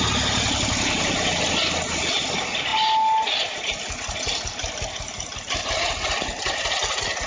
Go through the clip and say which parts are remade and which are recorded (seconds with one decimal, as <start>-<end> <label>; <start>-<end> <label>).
0.0-7.3 recorded